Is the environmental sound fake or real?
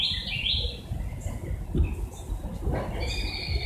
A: real